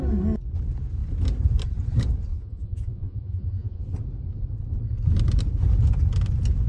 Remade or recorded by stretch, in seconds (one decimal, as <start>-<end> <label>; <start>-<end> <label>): 0.0-2.3 recorded; 2.3-3.8 remade; 3.8-6.7 recorded